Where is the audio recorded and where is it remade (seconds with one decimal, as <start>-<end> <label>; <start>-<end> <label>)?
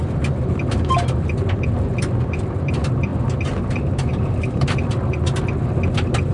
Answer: 0.0-6.3 recorded